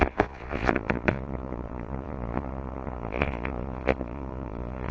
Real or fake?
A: fake